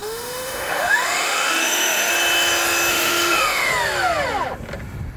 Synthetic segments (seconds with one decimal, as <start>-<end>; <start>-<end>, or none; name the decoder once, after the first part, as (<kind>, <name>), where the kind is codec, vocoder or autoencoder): 0.0-2.1 (autoencoder, DAC-VAE); 2.9-3.7